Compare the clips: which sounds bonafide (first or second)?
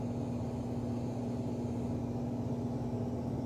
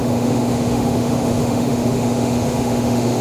first